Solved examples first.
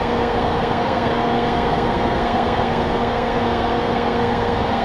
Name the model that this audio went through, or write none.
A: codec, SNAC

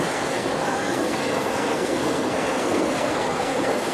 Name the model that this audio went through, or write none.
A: codec, SNAC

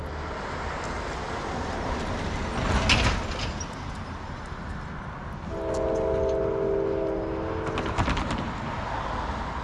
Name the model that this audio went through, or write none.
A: none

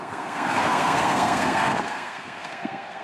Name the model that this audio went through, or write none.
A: codec, SNAC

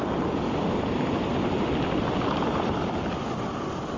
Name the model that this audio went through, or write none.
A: none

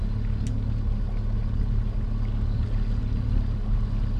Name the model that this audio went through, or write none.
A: none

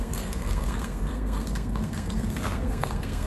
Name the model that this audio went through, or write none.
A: codec, SNAC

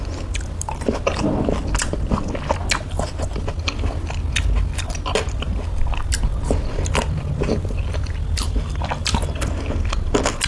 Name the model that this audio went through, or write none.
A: none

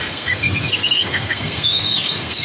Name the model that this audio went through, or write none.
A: codec, SNAC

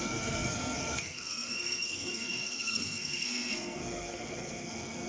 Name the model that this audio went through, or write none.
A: codec, SNAC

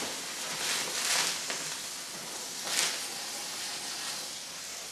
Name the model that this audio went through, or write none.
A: none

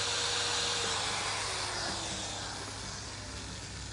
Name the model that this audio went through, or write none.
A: none